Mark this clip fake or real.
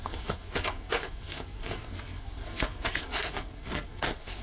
fake